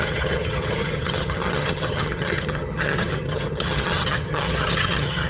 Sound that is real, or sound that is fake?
fake